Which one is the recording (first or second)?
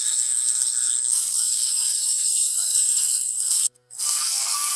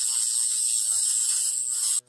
second